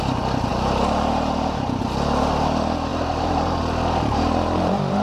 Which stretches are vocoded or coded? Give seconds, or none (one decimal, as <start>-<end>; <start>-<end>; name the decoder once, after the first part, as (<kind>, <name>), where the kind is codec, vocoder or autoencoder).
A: 0.5-1.8 (vocoder, BigVGAN v2); 2.9-3.6